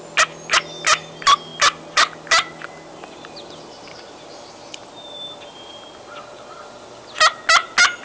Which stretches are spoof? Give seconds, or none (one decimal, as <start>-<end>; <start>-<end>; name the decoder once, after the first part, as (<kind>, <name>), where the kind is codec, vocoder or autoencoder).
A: none